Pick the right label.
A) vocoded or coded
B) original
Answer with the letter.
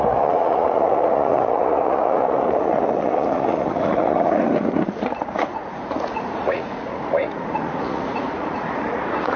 A